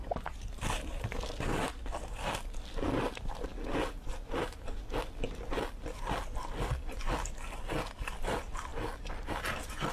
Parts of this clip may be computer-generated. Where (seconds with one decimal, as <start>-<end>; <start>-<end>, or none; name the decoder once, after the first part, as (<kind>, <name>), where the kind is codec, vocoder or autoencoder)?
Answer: none